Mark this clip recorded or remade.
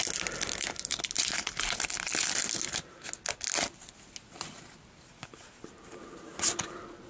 recorded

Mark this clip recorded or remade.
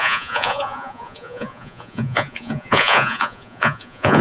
remade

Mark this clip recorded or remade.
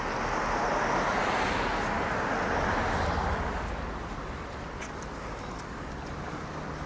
recorded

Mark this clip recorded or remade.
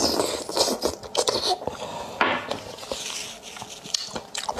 recorded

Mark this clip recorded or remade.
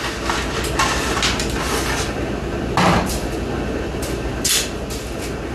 recorded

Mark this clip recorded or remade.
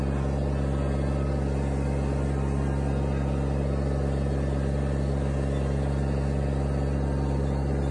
recorded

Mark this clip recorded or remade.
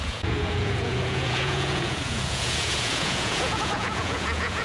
remade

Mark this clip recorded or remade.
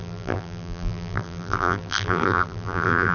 remade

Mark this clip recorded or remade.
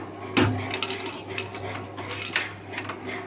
recorded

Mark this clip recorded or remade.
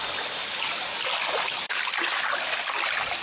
recorded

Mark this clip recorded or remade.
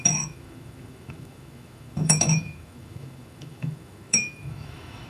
remade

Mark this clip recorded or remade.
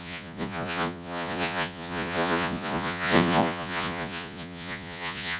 remade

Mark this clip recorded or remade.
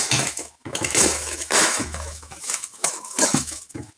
remade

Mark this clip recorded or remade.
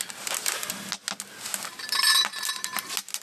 recorded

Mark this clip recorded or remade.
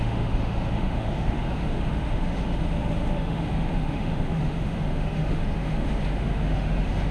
remade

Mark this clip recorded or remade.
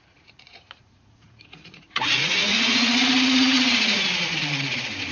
remade